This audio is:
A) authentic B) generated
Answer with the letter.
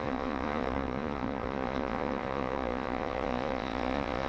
B